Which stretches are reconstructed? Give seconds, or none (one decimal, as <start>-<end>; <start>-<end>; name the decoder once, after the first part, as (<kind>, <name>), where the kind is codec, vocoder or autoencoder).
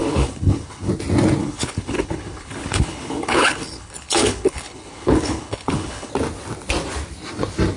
0.0-0.9 (codec, HILCodec); 1.4-6.1